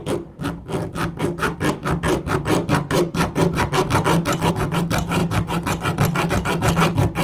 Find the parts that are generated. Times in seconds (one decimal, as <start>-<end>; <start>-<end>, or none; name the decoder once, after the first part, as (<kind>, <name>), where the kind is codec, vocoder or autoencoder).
none